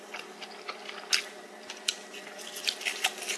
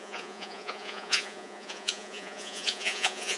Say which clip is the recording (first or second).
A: first